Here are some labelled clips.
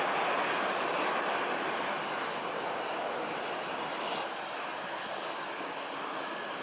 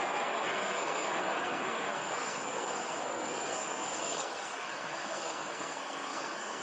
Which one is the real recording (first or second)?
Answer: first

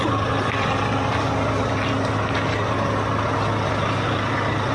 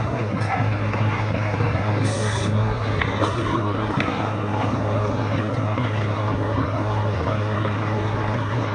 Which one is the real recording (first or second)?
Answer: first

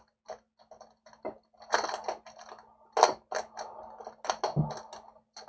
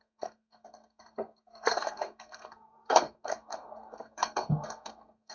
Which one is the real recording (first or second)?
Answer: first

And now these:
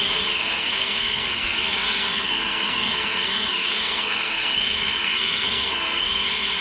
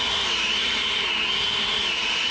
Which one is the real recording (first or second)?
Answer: second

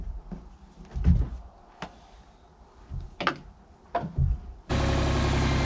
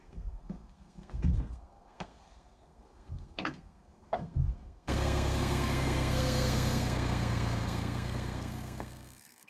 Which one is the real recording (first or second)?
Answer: first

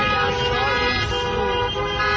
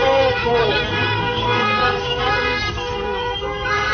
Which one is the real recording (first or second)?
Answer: first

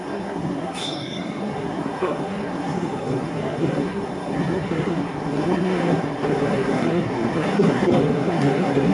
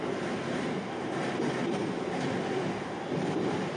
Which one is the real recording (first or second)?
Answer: second